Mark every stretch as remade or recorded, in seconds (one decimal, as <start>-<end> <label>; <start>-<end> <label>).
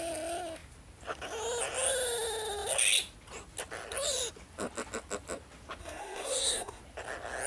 0.0-5.8 recorded; 5.8-6.8 remade; 6.8-7.5 recorded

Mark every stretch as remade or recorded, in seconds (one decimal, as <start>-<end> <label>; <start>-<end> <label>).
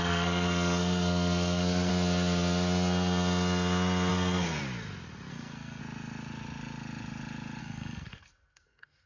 0.0-1.9 remade; 1.9-4.1 recorded; 4.1-4.6 remade; 4.6-5.3 recorded; 5.3-5.8 remade; 5.8-7.6 recorded; 7.6-9.1 remade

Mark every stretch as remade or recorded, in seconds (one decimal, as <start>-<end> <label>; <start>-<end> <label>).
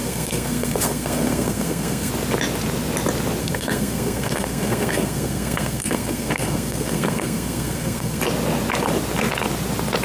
0.0-2.1 remade; 2.1-3.4 recorded; 3.4-8.2 remade; 8.2-10.0 recorded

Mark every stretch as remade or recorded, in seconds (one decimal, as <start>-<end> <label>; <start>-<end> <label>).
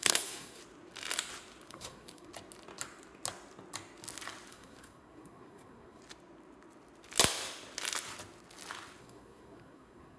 0.0-0.6 remade; 0.6-1.7 recorded; 1.7-2.3 remade; 2.3-4.5 recorded; 4.5-6.0 remade; 6.0-9.0 recorded; 9.0-10.2 remade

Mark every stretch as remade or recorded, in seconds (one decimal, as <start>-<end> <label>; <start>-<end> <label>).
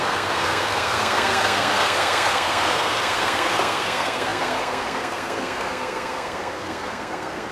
0.0-7.5 remade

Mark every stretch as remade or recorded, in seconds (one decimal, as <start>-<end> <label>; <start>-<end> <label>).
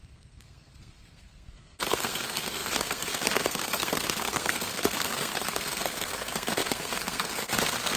0.0-8.0 remade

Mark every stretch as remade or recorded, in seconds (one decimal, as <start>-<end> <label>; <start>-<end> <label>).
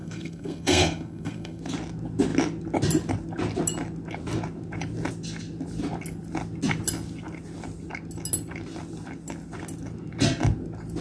0.0-1.6 remade; 1.6-11.0 recorded